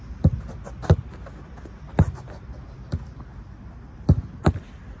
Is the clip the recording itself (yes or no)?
yes